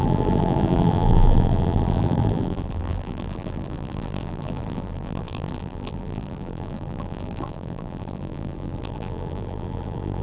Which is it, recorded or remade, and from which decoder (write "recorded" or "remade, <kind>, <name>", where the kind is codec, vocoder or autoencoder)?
remade, vocoder, BigVGAN v2